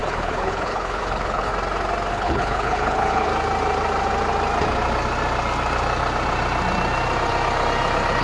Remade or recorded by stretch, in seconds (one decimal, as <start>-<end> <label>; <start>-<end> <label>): 0.0-1.5 remade; 1.5-2.1 recorded; 2.1-3.3 remade; 3.3-8.2 recorded